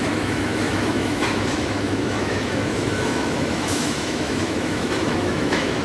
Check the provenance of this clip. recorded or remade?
remade